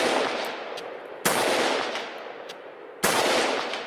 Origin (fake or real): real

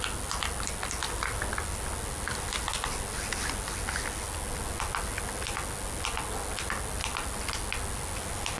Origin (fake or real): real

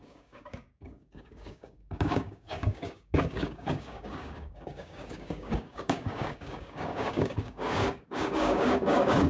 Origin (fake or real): fake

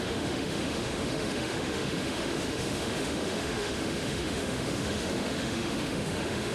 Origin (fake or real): fake